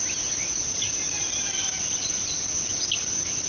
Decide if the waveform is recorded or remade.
recorded